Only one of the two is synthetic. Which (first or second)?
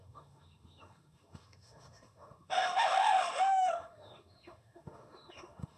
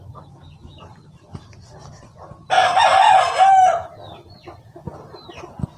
first